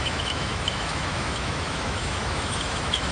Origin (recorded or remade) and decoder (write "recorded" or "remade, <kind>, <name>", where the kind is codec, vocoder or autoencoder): remade, autoencoder, DAC-VAE